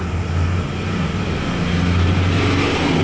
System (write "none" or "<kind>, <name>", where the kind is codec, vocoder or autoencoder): none